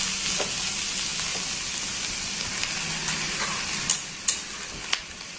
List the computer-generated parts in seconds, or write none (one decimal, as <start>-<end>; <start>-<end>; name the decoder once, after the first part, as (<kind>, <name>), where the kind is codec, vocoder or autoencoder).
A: none